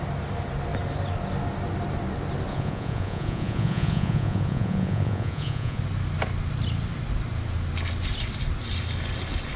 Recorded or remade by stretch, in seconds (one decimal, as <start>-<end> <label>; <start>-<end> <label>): 0.0-2.5 recorded; 2.5-5.8 remade; 5.8-9.6 recorded